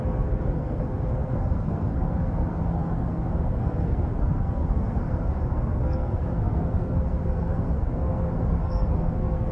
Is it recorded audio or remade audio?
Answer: remade